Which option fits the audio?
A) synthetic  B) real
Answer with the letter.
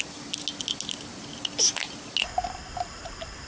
B